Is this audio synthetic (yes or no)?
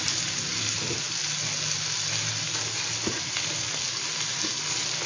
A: no